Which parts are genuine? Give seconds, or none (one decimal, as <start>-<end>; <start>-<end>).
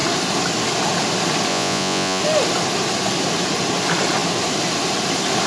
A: 0.0-1.5; 2.2-5.5